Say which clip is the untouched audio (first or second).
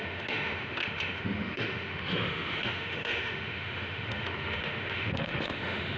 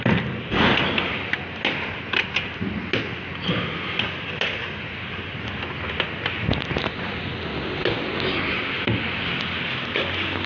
second